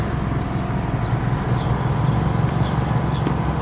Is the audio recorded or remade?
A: recorded